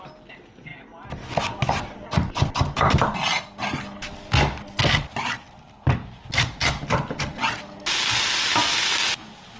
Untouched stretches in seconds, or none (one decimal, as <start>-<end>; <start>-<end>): 0.0-9.6